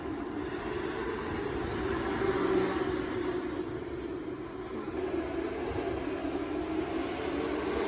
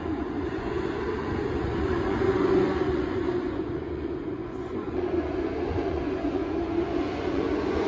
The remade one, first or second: second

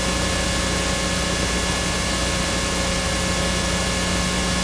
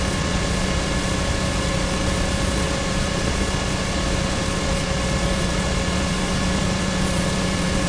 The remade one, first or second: second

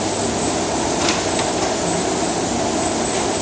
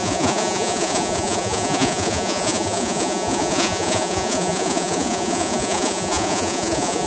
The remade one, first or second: second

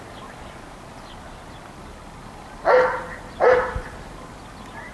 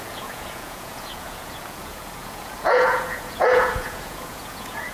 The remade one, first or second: second